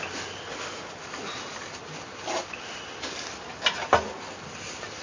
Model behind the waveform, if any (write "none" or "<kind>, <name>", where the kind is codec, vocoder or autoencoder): none